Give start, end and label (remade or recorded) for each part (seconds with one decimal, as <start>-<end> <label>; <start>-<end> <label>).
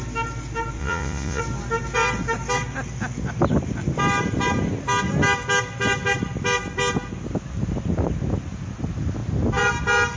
0.0-0.8 recorded; 0.8-1.4 remade; 1.4-10.2 recorded